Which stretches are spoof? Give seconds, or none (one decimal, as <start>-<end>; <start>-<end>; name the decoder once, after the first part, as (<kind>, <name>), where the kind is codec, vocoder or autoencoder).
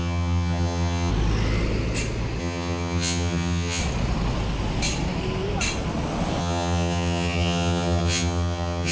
0.0-1.1 (vocoder, HiFi-GAN); 2.4-3.8; 6.4-8.9